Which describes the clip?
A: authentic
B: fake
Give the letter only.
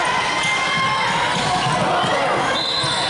A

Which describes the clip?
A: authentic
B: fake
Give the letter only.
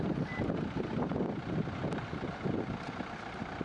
A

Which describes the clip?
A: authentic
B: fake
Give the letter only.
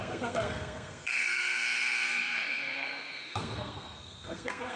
B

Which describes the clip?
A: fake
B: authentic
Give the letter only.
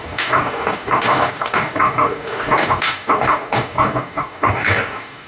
A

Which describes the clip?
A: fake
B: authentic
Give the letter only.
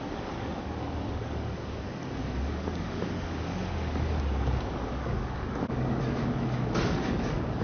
A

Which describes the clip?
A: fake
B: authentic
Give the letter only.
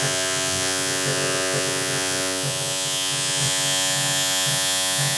A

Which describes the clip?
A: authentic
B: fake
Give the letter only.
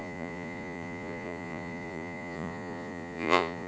B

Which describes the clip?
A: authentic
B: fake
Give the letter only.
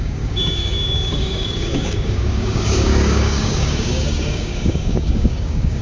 B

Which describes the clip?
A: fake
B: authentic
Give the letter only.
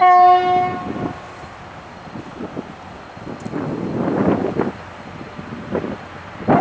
B